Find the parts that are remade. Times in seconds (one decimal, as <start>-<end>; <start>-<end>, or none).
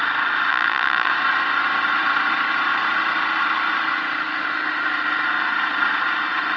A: 0.5-1.1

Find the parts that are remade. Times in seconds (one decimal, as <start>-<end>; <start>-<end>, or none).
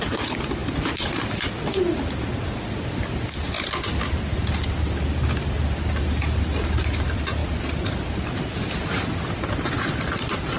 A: none